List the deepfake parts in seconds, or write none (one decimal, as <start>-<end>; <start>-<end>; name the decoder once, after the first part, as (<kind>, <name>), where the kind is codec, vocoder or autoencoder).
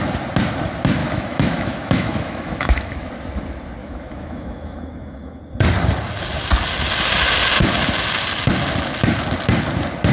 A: 1.0-3.1 (autoencoder, DAC-VAE); 3.8-5.4